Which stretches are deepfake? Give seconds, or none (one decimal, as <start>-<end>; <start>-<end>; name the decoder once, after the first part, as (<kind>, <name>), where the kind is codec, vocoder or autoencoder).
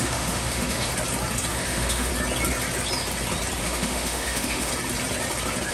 0.0-0.9 (autoencoder, DAC-VAE); 1.5-2.1; 3.6-4.7